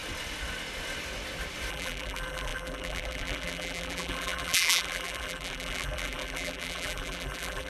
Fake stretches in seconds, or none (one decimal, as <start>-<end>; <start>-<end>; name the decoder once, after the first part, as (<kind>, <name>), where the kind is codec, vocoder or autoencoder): 1.7-7.7 (vocoder, BigVGAN v2)